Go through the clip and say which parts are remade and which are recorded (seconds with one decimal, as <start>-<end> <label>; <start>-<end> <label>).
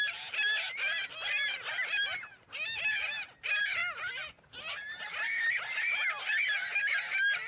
0.0-7.5 recorded